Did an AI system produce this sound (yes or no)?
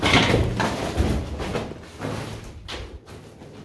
no